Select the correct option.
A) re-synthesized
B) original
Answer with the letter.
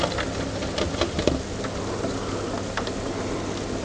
B